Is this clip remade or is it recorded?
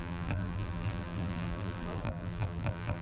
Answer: remade